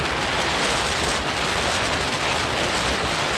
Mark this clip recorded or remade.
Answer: recorded